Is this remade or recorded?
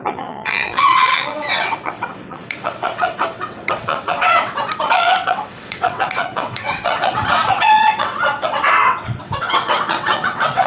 remade